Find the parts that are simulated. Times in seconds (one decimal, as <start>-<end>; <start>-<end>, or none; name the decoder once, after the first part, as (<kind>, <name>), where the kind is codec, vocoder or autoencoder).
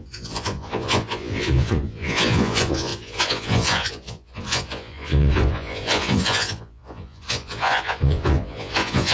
0.0-9.1 (vocoder, Vocos)